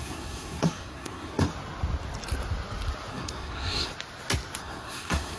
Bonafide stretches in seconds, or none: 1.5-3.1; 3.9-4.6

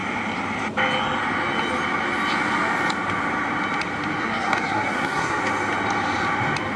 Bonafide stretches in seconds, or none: 0.0-4.2; 5.4-6.8

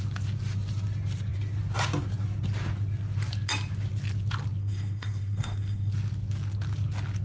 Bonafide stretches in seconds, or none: 0.0-4.6; 5.9-7.2